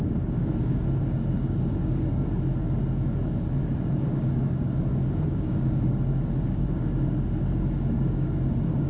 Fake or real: fake